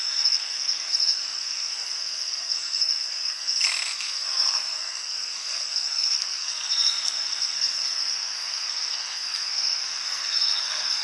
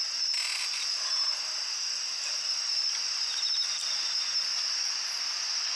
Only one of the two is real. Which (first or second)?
second